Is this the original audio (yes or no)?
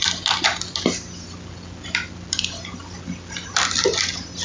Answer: yes